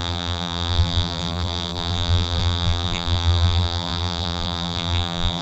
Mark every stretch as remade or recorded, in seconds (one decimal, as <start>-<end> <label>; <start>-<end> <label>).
0.0-5.4 remade